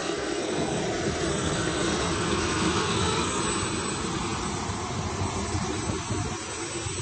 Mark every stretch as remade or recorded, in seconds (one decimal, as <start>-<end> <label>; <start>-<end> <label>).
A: 0.0-0.8 remade; 0.8-1.3 recorded; 1.3-3.4 remade; 3.4-7.0 recorded